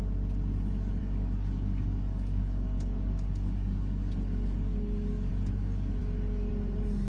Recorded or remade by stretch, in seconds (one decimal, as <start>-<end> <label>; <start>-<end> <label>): 0.0-1.0 recorded; 1.0-5.3 remade; 5.3-7.1 recorded